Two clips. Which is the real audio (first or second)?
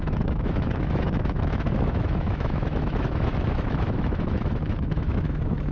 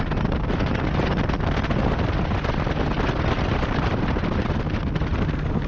second